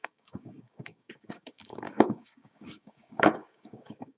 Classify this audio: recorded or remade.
remade